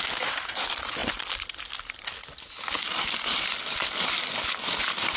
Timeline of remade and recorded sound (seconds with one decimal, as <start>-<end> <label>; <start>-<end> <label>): 0.0-5.2 recorded